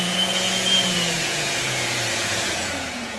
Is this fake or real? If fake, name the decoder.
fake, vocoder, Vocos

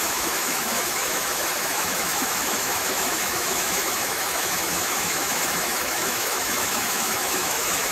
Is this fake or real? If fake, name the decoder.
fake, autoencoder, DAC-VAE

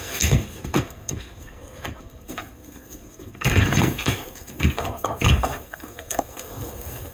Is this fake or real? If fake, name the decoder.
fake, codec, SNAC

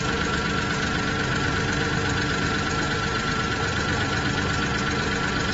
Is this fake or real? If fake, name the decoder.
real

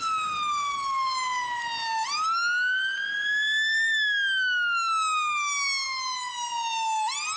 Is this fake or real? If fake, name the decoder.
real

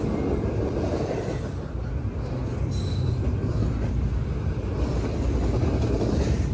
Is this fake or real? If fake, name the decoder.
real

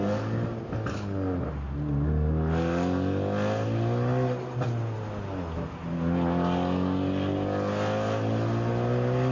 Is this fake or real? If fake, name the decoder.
real